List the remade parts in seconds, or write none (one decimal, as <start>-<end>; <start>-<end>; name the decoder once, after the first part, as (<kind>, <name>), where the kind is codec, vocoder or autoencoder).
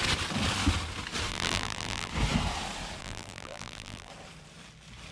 1.3-2.1 (vocoder, BigVGAN v2); 3.0-4.1